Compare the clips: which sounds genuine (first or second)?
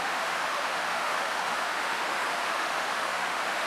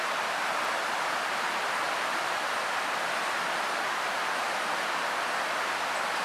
second